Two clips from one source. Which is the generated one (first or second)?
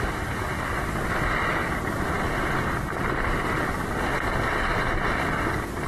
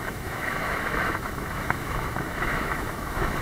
second